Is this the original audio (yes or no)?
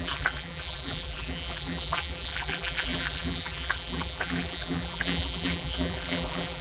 no